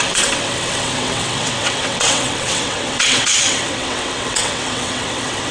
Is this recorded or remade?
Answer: remade